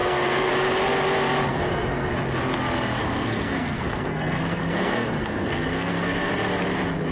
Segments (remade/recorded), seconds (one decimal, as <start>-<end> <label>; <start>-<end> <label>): 0.0-0.5 remade; 0.5-1.5 recorded; 1.5-2.1 remade; 2.1-3.0 recorded; 3.0-6.3 remade; 6.3-7.1 recorded